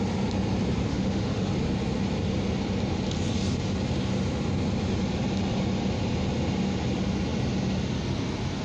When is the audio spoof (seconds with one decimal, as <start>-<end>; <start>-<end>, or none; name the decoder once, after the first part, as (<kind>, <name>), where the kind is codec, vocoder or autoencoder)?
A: 0.9-1.5 (autoencoder, DAC-VAE)